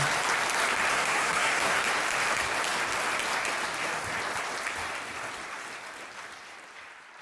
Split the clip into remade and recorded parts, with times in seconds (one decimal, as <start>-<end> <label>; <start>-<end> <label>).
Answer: 0.0-0.9 recorded; 0.9-1.8 remade; 1.8-7.2 recorded